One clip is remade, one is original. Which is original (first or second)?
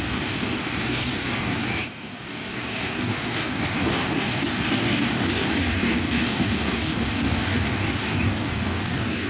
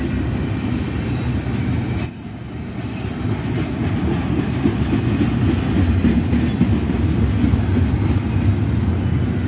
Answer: second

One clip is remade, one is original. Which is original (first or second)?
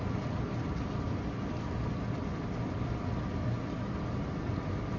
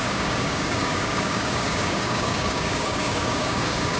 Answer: first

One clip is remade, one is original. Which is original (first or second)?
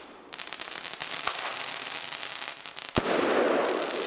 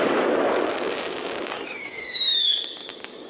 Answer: first